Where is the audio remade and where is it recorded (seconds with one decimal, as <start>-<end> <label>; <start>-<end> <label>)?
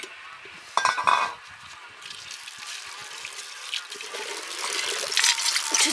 0.0-5.9 recorded